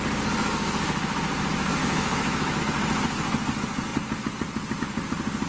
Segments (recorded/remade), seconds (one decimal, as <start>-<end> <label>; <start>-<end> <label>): 0.0-1.8 recorded; 1.8-2.6 remade; 2.6-5.5 recorded